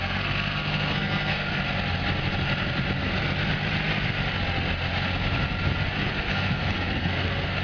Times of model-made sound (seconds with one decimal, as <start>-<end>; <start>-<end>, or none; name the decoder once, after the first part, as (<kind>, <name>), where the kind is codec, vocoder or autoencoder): 0.0-1.5 (codec, SNAC); 6.1-7.6